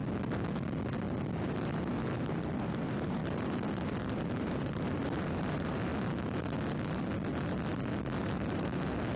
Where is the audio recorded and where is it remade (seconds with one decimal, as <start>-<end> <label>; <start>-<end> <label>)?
0.0-2.6 recorded; 2.6-3.2 remade; 3.2-4.0 recorded; 4.0-5.9 remade; 5.9-8.2 recorded; 8.2-9.2 remade